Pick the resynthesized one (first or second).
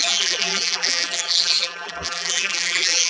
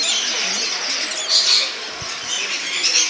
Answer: first